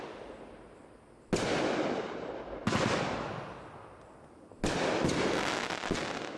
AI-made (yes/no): no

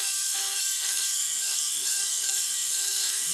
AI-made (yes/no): yes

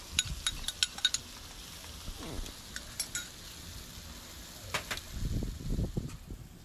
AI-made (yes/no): no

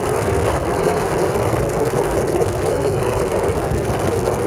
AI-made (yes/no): yes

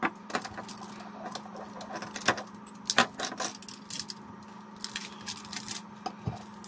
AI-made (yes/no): no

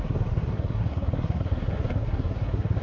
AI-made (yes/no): yes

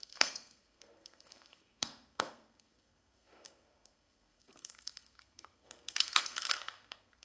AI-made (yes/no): yes